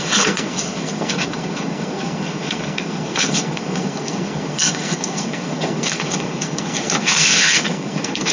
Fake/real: fake